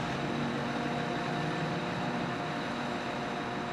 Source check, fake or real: real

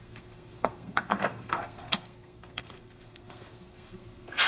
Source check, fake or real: fake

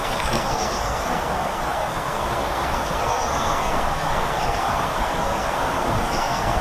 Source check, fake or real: fake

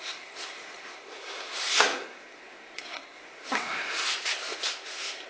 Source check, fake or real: fake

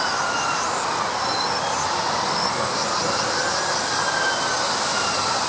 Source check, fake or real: real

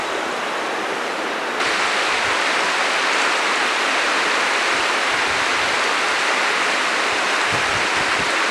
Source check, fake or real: real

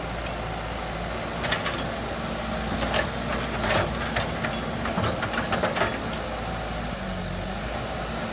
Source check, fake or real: real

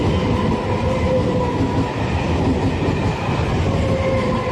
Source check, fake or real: real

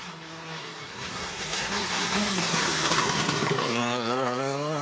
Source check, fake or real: fake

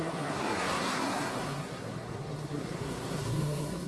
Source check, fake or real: fake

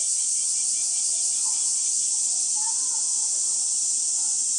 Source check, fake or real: real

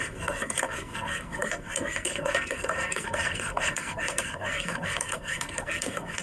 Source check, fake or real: fake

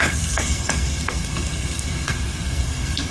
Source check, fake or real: fake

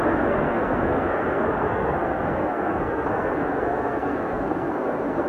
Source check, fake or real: fake